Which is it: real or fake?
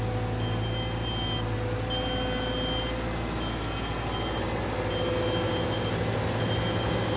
real